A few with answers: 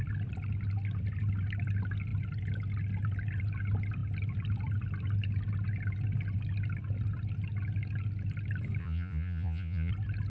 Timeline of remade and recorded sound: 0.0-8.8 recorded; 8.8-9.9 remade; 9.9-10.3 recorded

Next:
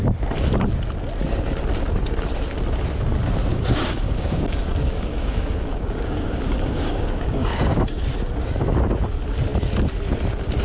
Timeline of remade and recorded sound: 0.0-3.5 recorded; 3.5-8.0 remade; 8.0-10.6 recorded

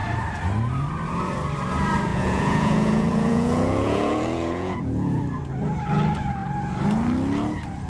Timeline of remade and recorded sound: 0.0-2.1 recorded; 2.1-5.2 remade; 5.2-7.9 recorded

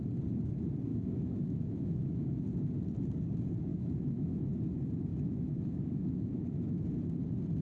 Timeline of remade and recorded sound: 0.0-0.9 recorded; 0.9-2.4 remade; 2.4-3.7 recorded; 3.7-4.5 remade; 4.5-5.1 recorded; 5.1-6.7 remade; 6.7-7.6 recorded

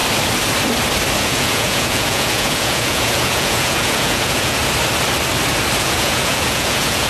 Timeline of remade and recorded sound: 0.0-1.2 recorded; 1.2-4.6 remade; 4.6-5.8 recorded; 5.8-7.1 remade